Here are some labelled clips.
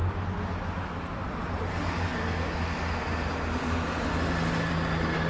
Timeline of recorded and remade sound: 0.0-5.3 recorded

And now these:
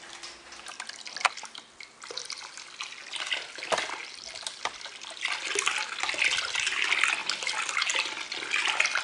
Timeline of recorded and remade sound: 0.0-9.0 recorded